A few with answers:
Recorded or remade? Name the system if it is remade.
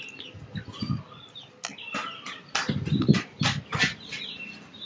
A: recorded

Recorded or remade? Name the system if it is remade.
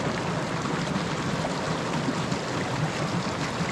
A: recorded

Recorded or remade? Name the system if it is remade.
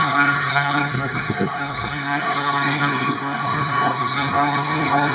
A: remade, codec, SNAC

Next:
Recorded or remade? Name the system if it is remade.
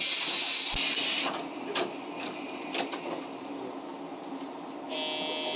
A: recorded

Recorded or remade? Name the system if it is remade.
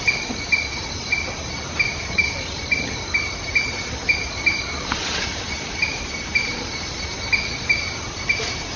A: recorded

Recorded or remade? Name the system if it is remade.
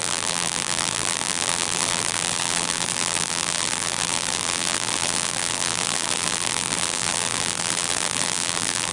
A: remade, vocoder, BigVGAN v2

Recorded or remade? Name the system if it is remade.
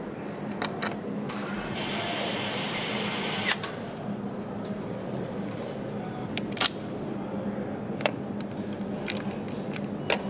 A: recorded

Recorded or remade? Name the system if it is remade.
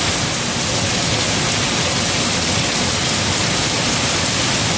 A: recorded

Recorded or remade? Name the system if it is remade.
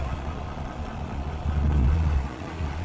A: remade, vocoder, Vocos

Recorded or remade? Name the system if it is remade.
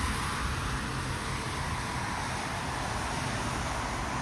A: recorded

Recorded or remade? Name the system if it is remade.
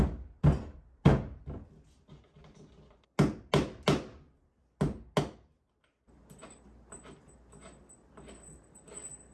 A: recorded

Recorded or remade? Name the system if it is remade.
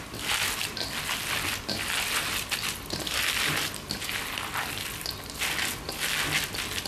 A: recorded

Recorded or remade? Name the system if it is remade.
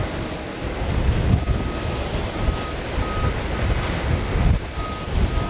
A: recorded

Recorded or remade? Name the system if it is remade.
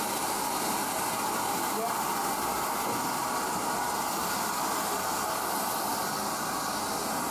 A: recorded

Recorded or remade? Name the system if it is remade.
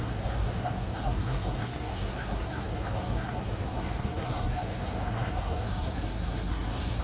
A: remade, codec, SNAC